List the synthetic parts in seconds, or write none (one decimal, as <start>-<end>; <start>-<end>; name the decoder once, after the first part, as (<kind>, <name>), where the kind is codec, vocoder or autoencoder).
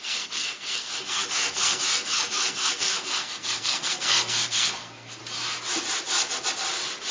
0.0-5.2 (codec, SNAC)